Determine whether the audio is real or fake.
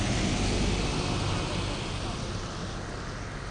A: real